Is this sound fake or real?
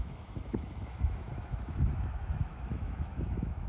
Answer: fake